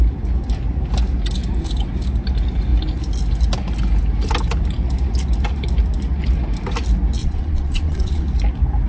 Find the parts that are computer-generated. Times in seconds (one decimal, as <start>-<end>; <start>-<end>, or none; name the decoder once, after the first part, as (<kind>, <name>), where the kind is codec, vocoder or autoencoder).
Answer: 7.2-8.2 (vocoder, WaveNeXt)